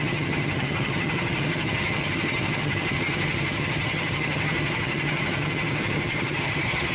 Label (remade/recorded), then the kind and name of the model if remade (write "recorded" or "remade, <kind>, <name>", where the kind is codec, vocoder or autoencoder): remade, vocoder, HiFi-GAN